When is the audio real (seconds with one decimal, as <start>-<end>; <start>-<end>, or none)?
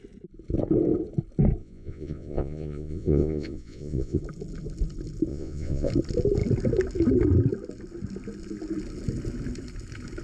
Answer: 0.0-1.6; 4.2-5.3; 5.9-10.2